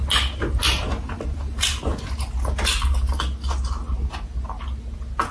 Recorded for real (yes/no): yes